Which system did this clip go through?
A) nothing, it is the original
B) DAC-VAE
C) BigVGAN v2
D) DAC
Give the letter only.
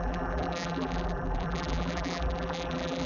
C